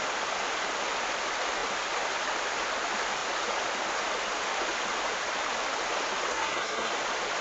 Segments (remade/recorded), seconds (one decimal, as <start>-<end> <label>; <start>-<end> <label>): 0.0-6.3 recorded; 6.3-6.9 remade; 6.9-7.4 recorded